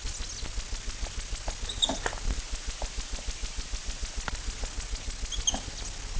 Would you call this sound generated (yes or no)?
no